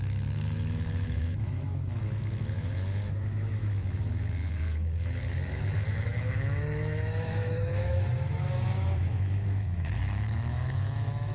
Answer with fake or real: fake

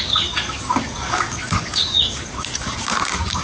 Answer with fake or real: fake